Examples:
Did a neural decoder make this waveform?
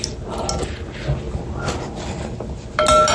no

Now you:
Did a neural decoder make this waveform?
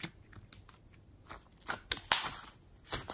no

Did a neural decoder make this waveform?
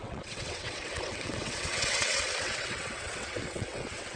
yes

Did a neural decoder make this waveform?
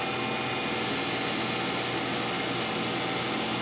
no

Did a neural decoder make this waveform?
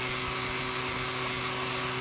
no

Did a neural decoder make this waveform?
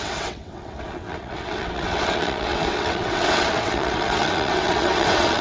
yes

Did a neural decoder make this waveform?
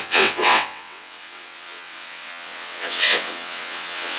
yes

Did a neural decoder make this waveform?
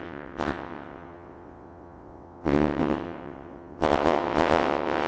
yes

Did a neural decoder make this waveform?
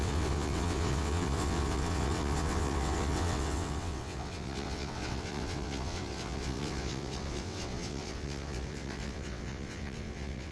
yes